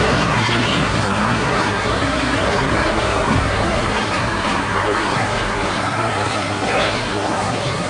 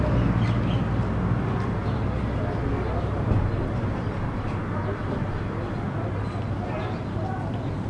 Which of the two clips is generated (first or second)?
first